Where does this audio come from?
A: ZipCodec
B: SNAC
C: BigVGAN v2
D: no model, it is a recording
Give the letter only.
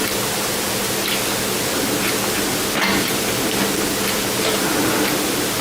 D